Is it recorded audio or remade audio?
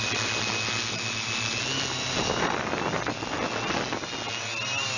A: recorded